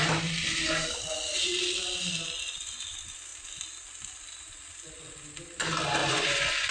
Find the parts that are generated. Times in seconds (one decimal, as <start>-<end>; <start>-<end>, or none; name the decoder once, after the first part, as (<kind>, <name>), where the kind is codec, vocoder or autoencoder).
6.0-6.7 (vocoder, Vocos)